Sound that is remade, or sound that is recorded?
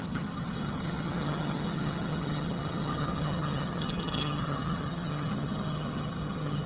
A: remade